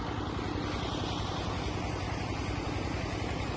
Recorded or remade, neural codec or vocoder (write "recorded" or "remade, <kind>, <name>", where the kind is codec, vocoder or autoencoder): recorded